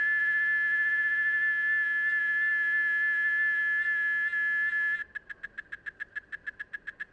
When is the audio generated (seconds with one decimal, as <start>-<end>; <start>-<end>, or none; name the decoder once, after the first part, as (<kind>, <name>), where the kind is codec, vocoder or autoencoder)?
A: none